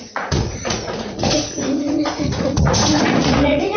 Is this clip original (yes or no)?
no